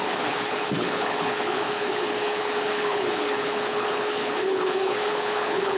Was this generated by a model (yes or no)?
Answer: yes